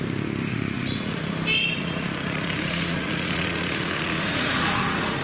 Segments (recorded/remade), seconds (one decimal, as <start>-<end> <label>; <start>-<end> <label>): 0.0-0.5 recorded; 0.5-1.3 remade; 1.3-1.8 recorded; 1.8-5.2 remade